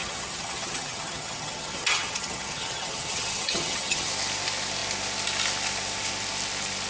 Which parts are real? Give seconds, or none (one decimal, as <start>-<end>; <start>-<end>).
4.1-6.9